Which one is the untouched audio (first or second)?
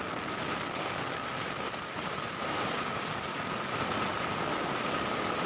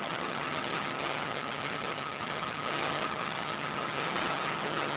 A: first